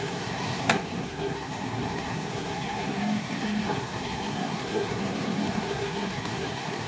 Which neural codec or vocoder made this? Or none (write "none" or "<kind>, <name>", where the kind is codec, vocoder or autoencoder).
codec, SNAC